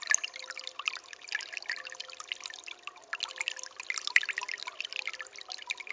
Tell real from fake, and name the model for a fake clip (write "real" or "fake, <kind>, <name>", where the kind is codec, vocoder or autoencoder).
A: real